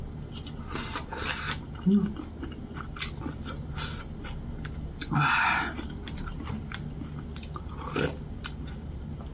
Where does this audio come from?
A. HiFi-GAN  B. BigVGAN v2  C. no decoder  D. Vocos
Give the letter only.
C